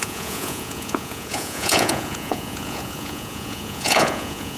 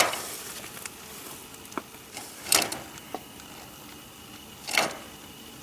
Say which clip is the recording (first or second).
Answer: second